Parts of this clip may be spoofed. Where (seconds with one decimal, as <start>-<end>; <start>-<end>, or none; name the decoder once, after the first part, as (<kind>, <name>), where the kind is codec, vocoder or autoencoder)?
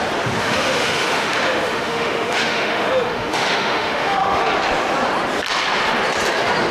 0.4-4.4 (autoencoder, DAC-VAE)